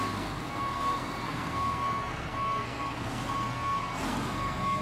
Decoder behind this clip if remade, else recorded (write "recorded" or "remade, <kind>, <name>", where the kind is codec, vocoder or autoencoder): remade, codec, SNAC